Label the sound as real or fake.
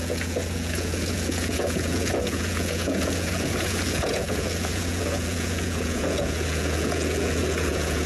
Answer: fake